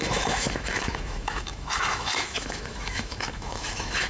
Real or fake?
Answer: fake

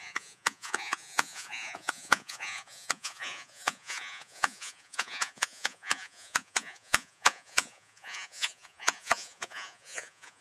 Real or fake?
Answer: fake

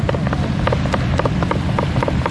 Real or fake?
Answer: fake